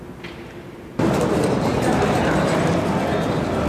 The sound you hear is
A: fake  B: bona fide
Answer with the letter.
B